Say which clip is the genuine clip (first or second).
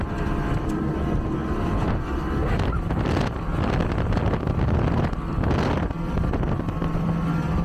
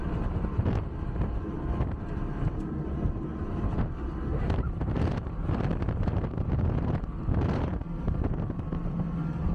first